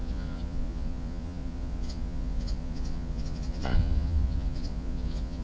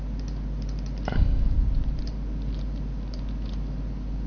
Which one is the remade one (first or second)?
first